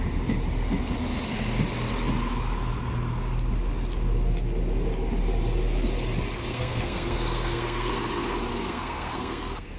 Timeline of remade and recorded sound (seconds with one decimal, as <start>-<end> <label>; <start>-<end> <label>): 0.0-6.5 recorded; 6.5-7.9 remade; 7.9-8.5 recorded; 8.5-9.8 remade